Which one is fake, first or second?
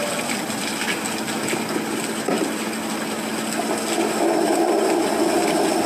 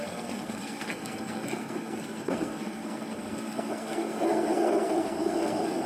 second